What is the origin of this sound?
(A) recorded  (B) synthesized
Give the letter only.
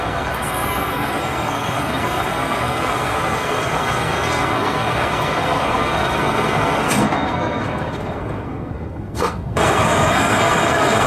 B